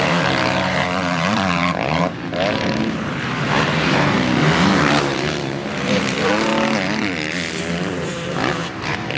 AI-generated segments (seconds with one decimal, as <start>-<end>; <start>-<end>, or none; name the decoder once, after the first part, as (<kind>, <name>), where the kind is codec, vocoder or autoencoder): 0.0-6.5 (vocoder, BigVGAN v2); 7.6-9.2